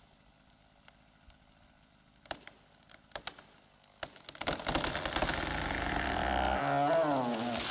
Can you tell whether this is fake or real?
real